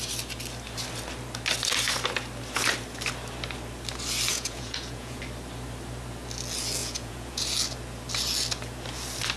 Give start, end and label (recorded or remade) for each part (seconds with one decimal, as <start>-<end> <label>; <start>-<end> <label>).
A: 0.0-4.3 recorded; 4.3-5.2 remade; 5.2-6.8 recorded; 6.8-7.4 remade; 7.4-9.4 recorded